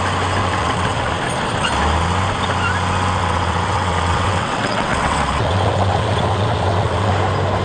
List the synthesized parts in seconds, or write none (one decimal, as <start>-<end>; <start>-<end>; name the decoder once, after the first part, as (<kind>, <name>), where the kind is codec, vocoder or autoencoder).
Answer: 0.4-1.1 (vocoder, WaveNeXt); 3.2-7.1